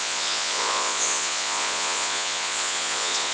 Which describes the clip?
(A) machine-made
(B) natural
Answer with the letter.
A